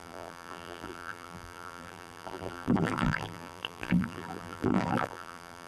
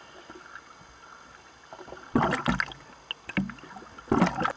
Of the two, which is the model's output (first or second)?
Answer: first